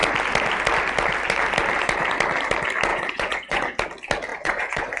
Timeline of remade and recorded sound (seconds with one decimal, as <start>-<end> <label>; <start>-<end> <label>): 0.0-2.9 recorded; 2.9-3.8 remade; 3.8-4.3 recorded; 4.3-5.0 remade